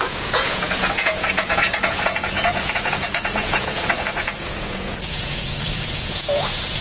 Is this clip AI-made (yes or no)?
yes